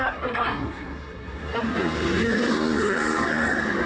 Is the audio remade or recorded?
remade